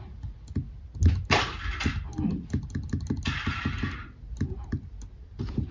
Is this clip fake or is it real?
real